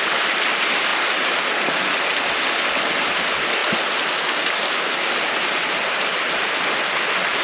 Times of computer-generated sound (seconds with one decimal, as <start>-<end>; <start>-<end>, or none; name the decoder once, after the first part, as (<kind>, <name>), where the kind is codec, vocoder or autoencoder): none